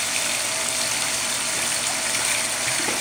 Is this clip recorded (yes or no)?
yes